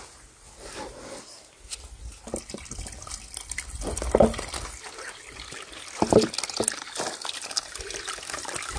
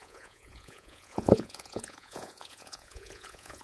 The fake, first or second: second